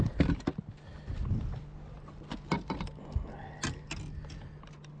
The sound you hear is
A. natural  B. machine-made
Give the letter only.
A